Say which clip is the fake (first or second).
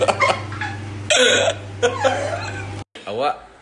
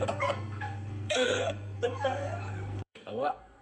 second